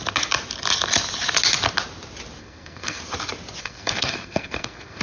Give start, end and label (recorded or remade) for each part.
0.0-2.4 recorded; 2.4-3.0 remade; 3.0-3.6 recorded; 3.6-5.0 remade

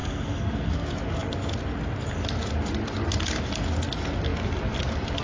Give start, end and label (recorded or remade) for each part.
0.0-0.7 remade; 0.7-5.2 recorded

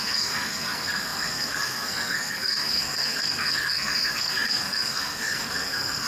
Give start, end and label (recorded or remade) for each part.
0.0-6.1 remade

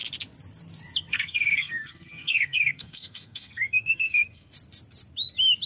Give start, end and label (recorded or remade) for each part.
0.0-1.1 recorded; 1.1-4.5 remade; 4.5-5.7 recorded

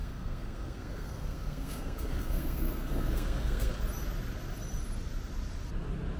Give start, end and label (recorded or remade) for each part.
0.0-3.7 remade; 3.7-6.2 recorded

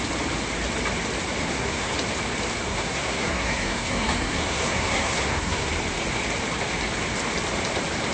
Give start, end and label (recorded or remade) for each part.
0.0-1.4 recorded; 1.4-1.9 remade; 1.9-2.7 recorded; 2.7-5.7 remade; 5.7-8.1 recorded

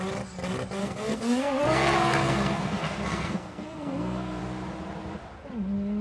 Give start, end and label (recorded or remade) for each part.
0.0-0.8 recorded; 0.8-4.4 remade; 4.4-6.0 recorded